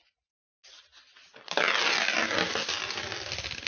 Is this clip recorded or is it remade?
recorded